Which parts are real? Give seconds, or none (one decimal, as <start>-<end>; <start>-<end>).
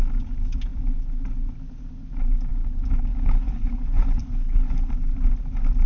0.0-3.1; 4.9-5.9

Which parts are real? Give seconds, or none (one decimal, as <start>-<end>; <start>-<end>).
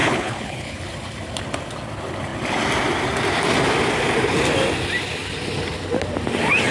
0.8-6.7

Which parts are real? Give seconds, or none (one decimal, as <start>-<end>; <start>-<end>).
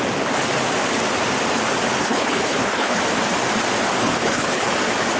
0.0-2.0; 3.0-4.0; 4.7-5.2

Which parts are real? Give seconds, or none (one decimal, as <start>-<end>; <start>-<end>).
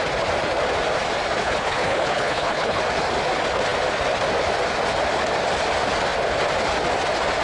0.0-1.4; 2.8-7.4